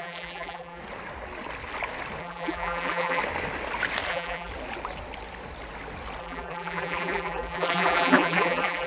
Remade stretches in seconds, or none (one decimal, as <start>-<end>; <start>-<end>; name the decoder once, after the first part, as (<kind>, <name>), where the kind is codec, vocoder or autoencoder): 0.0-0.8 (vocoder, BigVGAN v2); 2.2-3.2; 4.1-4.5; 6.2-8.9